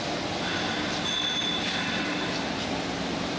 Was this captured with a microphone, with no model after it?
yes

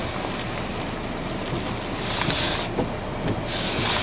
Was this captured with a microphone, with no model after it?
yes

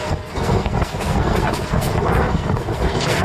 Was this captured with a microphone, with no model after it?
no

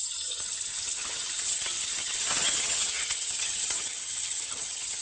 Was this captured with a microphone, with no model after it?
no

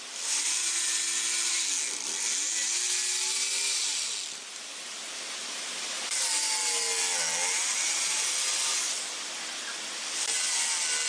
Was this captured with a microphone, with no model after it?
yes